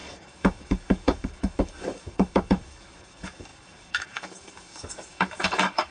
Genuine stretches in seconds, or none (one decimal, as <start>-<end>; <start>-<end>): none